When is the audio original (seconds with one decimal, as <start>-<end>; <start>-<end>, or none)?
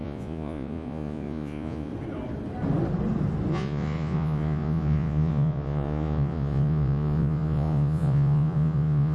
1.9-3.5